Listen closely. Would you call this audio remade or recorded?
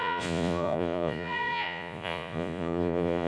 remade